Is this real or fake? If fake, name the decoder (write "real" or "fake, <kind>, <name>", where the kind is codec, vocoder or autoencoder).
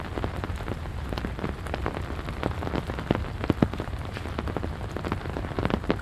fake, vocoder, BigVGAN v2